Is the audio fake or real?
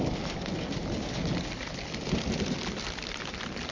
real